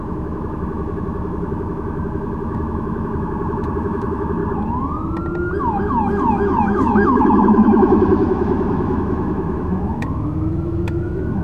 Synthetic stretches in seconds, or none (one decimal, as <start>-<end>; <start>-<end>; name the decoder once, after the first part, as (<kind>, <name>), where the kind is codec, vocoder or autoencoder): 0.0-4.4 (autoencoder, DAC-VAE); 5.6-11.4